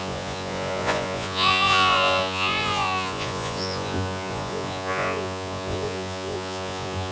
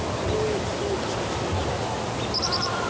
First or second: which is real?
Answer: second